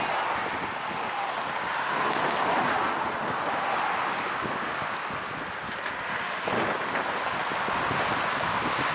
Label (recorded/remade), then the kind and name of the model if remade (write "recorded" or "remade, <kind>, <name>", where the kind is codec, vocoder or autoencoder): recorded